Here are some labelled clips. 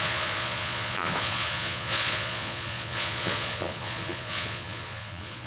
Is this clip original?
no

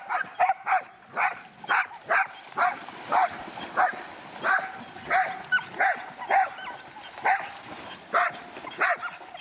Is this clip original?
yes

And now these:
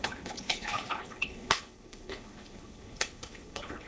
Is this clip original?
no